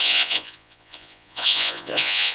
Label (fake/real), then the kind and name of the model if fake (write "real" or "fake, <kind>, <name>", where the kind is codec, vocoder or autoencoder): fake, vocoder, Vocos